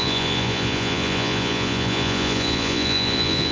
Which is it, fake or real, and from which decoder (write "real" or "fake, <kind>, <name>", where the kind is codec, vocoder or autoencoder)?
fake, vocoder, Vocos